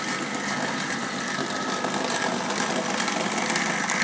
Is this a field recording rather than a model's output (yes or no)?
yes